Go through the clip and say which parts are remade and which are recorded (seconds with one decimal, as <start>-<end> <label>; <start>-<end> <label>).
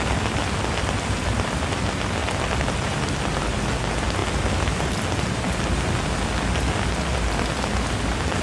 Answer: 0.0-2.2 recorded; 2.2-3.0 remade; 3.0-8.4 recorded